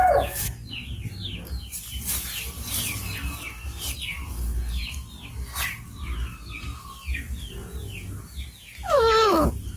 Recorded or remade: recorded